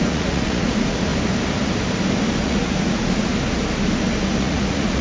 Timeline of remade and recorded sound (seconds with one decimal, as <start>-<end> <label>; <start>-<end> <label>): 0.0-1.1 remade; 1.1-2.4 recorded; 2.4-3.3 remade; 3.3-4.4 recorded; 4.4-5.0 remade